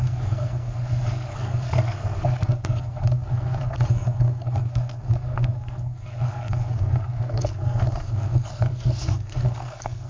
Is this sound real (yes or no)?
no